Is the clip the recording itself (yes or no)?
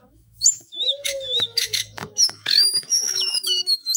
no